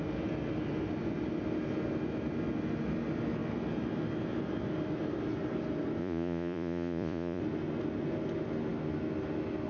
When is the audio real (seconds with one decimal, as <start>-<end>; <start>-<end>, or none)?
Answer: 0.0-6.0; 7.4-9.7